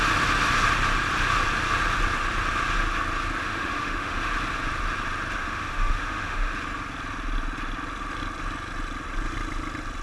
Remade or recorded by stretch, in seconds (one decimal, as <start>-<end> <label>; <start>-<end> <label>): 0.0-3.4 recorded; 3.4-4.3 remade; 4.3-5.4 recorded; 5.4-6.5 remade; 6.5-10.0 recorded